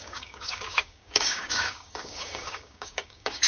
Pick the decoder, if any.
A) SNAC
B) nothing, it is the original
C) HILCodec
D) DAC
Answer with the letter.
D